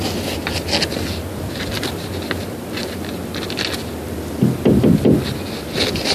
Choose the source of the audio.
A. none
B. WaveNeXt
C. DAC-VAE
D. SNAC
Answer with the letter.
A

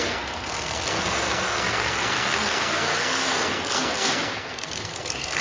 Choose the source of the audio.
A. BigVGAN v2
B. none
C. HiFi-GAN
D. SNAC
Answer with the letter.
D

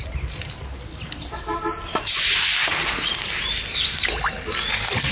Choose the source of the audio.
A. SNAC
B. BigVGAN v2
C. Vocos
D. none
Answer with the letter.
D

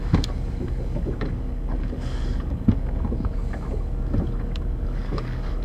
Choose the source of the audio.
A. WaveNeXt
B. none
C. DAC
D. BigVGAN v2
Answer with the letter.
C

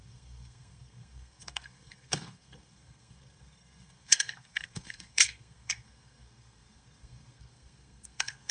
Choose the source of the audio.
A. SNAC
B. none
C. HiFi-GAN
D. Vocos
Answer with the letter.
A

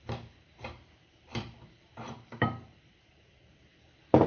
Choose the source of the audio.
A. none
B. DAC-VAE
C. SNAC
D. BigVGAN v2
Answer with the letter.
D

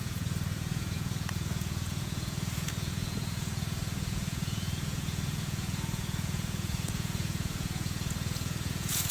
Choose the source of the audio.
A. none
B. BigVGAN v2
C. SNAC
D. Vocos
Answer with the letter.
D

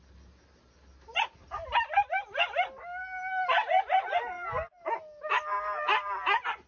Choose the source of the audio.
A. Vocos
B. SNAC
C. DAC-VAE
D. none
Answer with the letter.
D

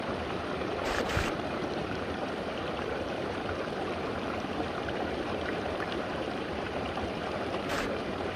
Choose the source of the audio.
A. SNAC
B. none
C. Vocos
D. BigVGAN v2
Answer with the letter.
D